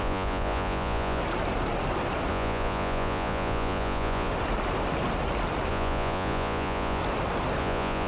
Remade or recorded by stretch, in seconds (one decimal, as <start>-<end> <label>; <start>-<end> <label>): 0.0-1.2 remade; 1.2-2.3 recorded; 2.3-4.3 remade; 4.3-5.7 recorded; 5.7-7.0 remade; 7.0-7.6 recorded; 7.6-8.1 remade